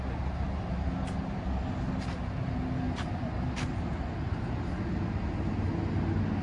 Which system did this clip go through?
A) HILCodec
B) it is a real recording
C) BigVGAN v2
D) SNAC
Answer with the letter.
B